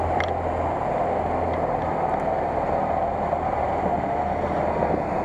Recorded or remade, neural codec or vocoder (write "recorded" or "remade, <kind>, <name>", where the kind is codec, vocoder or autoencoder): recorded